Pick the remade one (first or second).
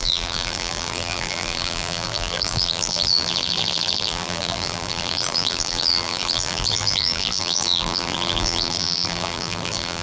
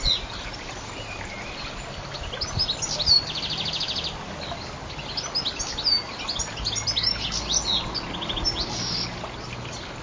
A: first